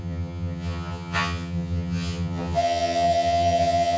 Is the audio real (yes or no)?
no